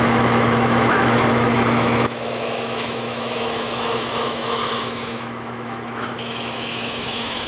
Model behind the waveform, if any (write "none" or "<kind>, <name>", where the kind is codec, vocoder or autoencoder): autoencoder, DAC-VAE